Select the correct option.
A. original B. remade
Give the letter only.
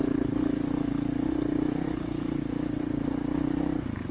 A